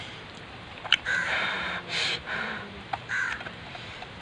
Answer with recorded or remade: remade